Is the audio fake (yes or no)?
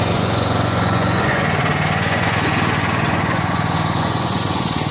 yes